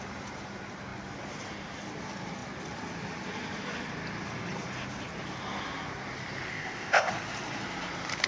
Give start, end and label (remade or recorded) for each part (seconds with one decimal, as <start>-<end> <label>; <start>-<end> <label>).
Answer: 0.0-6.5 recorded; 6.5-7.1 remade; 7.1-8.3 recorded